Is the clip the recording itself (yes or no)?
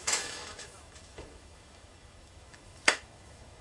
no